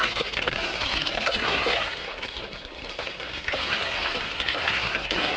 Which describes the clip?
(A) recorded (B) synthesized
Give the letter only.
B